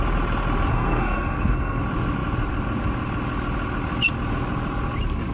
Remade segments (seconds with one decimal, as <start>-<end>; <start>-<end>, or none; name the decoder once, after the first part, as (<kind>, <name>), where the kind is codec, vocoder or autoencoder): 0.7-1.8 (codec, SNAC)